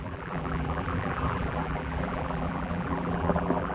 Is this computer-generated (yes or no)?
yes